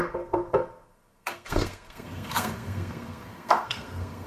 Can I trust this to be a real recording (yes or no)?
no